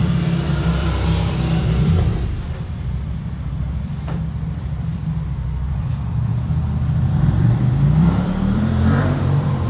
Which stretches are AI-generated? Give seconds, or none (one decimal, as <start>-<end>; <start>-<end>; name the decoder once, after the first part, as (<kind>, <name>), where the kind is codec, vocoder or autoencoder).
0.0-9.7 (vocoder, BigVGAN v2)